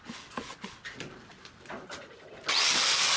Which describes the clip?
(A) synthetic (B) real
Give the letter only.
B